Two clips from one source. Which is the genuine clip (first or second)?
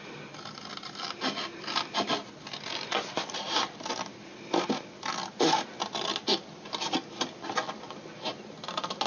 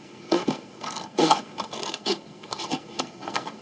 first